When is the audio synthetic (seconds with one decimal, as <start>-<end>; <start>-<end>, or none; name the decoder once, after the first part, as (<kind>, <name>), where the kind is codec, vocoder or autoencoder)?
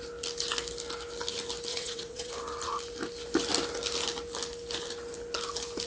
1.7-2.3 (vocoder, WaveNeXt)